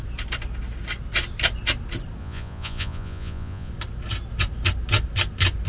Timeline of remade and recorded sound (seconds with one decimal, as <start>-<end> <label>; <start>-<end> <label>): 0.0-2.2 recorded; 2.2-3.7 remade; 3.7-5.7 recorded